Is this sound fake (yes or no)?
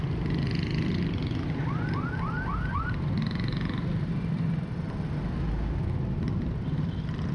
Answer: no